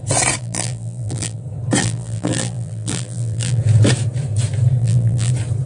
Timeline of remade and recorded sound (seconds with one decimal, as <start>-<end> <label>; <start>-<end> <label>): 0.0-0.4 recorded; 0.4-1.4 remade; 1.4-1.8 recorded; 1.8-3.6 remade; 3.6-4.8 recorded; 4.8-5.3 remade; 5.3-5.7 recorded